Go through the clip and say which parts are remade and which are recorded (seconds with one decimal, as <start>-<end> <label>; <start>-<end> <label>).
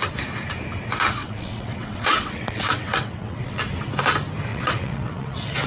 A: 0.0-1.2 recorded; 1.2-3.6 remade; 3.6-4.5 recorded; 4.5-5.7 remade